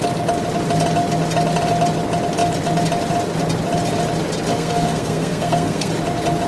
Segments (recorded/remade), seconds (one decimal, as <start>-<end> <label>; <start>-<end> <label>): 0.0-4.5 recorded; 4.5-5.9 remade; 5.9-6.5 recorded